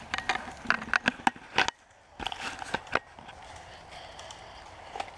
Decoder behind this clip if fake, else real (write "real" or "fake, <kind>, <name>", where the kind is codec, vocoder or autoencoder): real